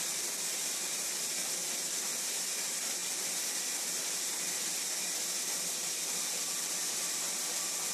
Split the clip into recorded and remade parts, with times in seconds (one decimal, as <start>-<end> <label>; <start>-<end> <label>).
0.0-1.4 remade; 1.4-2.3 recorded; 2.3-7.9 remade